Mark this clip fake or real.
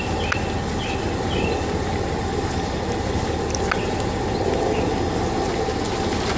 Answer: real